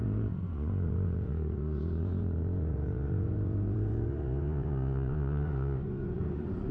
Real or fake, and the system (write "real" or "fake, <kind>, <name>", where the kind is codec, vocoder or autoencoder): fake, vocoder, Vocos